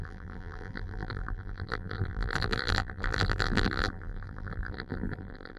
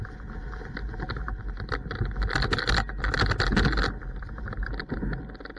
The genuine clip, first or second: second